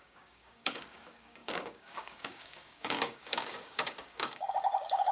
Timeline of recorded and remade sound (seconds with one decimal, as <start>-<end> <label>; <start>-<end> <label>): 0.0-5.1 remade